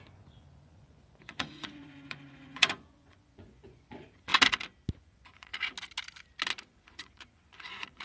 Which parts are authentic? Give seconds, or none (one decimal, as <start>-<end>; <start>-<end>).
4.3-4.9; 5.5-6.6